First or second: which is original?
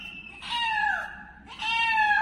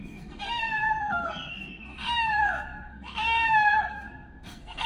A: first